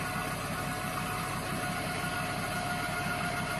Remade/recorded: recorded